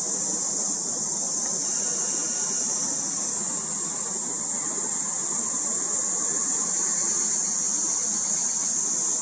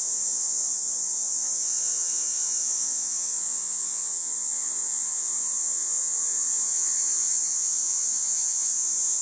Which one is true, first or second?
first